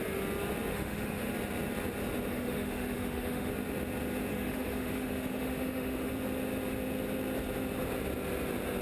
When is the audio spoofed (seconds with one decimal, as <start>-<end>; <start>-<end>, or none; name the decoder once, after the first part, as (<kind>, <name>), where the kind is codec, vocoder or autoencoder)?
0.7-1.3 (autoencoder, DAC-VAE); 2.3-3.5; 4.3-6.1